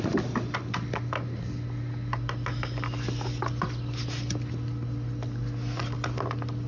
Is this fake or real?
real